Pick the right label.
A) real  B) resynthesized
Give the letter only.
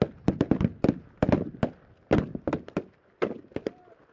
A